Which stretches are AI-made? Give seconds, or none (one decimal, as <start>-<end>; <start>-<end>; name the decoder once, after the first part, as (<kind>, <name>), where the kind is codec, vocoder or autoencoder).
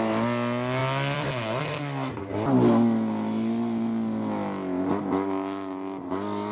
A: 0.8-1.6 (vocoder, BigVGAN v2)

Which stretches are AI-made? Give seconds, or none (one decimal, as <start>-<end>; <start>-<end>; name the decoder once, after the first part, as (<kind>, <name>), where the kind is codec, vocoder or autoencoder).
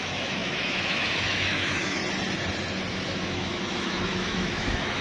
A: 0.0-2.0 (autoencoder, DAC-VAE); 2.9-5.0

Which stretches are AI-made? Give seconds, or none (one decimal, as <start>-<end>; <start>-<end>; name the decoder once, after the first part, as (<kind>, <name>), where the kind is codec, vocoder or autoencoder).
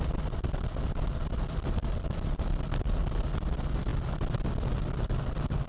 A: none